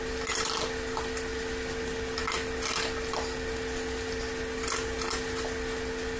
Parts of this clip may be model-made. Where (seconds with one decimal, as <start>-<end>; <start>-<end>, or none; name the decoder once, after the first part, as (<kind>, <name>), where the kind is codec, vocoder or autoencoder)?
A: none